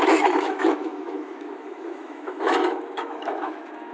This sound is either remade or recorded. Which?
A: remade